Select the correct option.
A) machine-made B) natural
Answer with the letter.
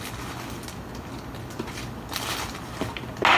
B